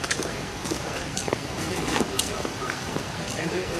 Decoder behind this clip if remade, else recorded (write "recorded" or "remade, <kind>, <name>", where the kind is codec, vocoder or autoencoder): remade, codec, SNAC